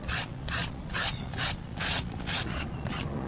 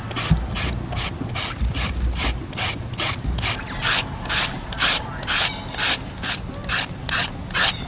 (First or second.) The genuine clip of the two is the second